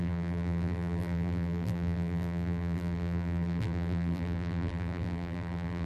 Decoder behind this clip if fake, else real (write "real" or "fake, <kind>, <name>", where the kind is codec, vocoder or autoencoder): fake, vocoder, BigVGAN v2